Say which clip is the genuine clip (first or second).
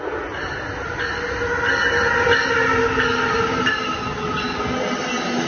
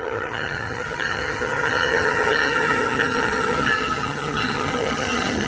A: first